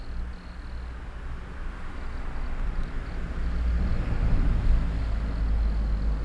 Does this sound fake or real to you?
real